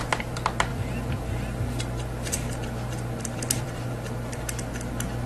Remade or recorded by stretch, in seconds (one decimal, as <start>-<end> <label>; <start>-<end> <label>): 0.0-0.7 recorded; 0.7-3.9 remade; 3.9-5.3 recorded